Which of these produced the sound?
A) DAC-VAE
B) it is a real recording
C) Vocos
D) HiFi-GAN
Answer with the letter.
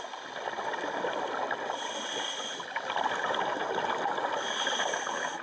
B